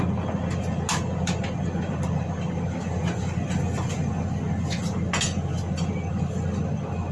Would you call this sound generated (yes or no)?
no